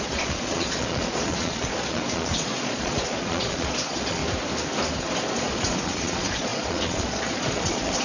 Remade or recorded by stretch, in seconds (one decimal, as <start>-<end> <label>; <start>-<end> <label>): 0.0-4.2 remade; 4.2-5.0 recorded; 5.0-8.0 remade

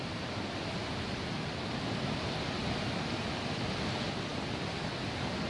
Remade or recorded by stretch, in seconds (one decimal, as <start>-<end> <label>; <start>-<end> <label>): 0.0-2.6 recorded; 2.6-3.2 remade; 3.2-5.5 recorded

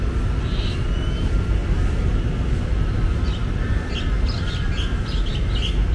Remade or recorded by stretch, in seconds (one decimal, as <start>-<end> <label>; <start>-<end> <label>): 0.0-1.6 recorded; 1.6-4.0 remade; 4.0-5.9 recorded

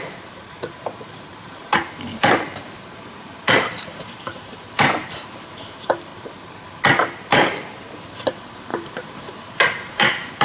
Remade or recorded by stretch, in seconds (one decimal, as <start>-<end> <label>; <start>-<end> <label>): 0.0-6.1 remade; 6.1-7.8 recorded; 7.8-10.4 remade

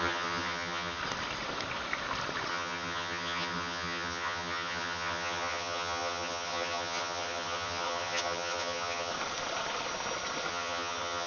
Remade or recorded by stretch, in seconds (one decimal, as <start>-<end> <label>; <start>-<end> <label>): 0.0-1.0 remade; 1.0-2.5 recorded; 2.5-9.1 remade; 9.1-10.5 recorded; 10.5-11.3 remade

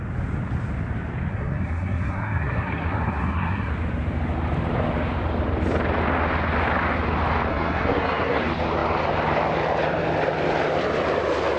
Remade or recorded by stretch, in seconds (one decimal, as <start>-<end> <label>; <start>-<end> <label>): 0.0-1.3 recorded; 1.3-3.7 remade; 3.7-7.5 recorded; 7.5-8.4 remade; 8.4-11.6 recorded